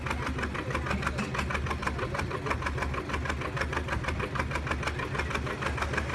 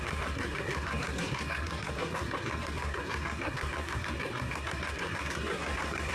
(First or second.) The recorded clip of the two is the first